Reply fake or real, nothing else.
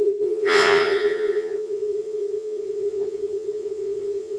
fake